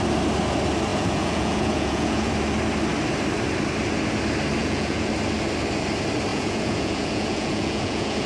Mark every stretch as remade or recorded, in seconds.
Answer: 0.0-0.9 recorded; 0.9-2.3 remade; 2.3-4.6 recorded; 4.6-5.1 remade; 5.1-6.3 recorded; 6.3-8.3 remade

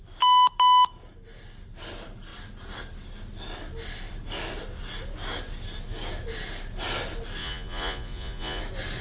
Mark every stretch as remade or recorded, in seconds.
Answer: 0.0-7.4 recorded; 7.4-8.6 remade; 8.6-9.0 recorded

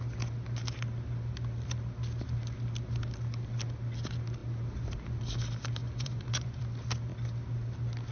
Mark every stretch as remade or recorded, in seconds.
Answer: 0.0-5.8 recorded; 5.8-6.6 remade; 6.6-8.1 recorded

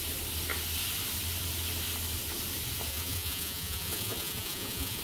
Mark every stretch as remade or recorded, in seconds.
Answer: 0.0-2.9 recorded; 2.9-5.0 remade

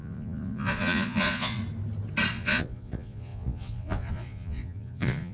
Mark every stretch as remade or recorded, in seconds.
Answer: 0.0-1.6 remade; 1.6-2.3 recorded; 2.3-5.3 remade